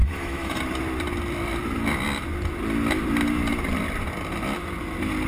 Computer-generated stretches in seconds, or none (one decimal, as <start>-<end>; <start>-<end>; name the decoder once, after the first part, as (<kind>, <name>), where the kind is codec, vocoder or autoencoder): 0.0-0.6 (autoencoder, DAC-VAE)